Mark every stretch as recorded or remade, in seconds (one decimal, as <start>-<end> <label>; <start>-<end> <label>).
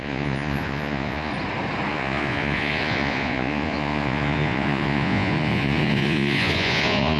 0.0-1.3 remade; 1.3-1.9 recorded; 1.9-7.2 remade